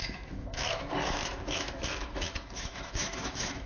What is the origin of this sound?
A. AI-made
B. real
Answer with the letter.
A